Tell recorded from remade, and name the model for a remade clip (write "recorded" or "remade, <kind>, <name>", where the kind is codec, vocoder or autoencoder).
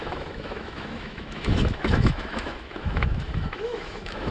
remade, autoencoder, DAC-VAE